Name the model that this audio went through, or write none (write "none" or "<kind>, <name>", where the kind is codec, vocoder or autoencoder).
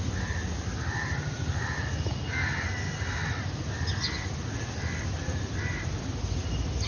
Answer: none